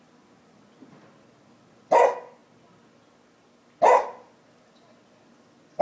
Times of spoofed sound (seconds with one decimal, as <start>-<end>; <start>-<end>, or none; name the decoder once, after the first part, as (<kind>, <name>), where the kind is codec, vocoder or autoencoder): none